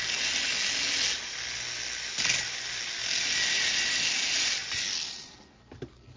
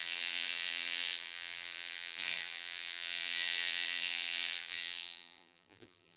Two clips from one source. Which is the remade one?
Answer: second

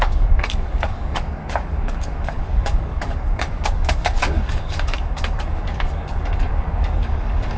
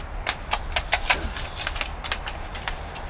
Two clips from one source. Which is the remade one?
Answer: first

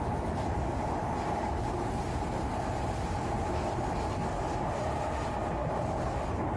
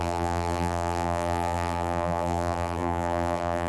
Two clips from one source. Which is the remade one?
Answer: second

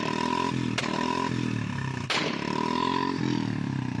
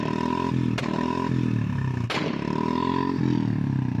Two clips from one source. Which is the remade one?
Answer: first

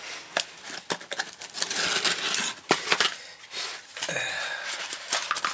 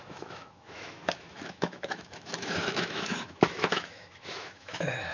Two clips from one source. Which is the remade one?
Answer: second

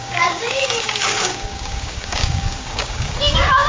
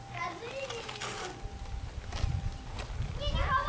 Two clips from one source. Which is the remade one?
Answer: first